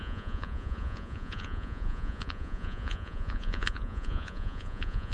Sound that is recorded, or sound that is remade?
remade